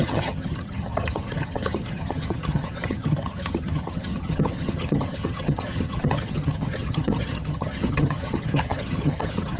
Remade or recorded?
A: remade